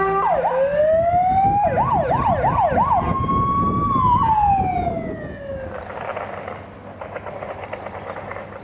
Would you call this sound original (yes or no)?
yes